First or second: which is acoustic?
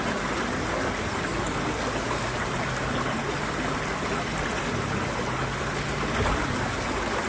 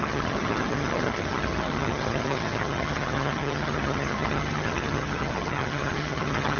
first